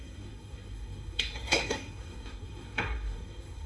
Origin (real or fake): fake